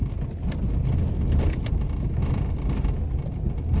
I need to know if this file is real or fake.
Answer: real